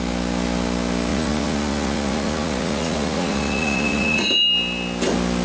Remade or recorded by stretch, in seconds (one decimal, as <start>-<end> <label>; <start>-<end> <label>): 0.0-1.1 recorded; 1.1-4.3 remade; 4.3-5.4 recorded